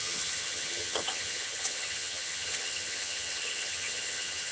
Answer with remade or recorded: remade